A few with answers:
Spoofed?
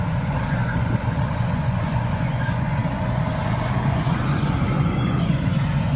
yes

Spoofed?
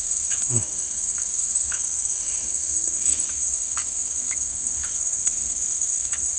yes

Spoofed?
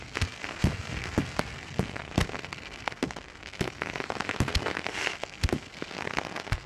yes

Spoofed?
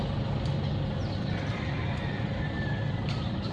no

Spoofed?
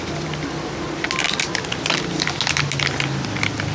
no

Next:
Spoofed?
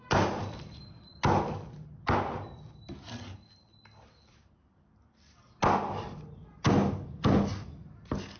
no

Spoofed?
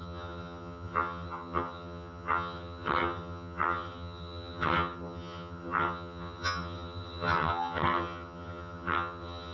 yes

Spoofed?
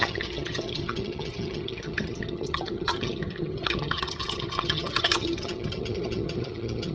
yes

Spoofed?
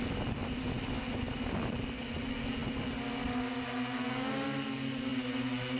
no